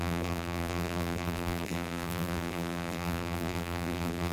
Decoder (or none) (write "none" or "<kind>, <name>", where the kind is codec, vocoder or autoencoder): vocoder, BigVGAN v2